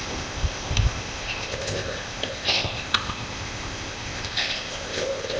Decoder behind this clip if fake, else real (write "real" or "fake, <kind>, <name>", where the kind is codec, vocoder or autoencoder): fake, codec, ZipCodec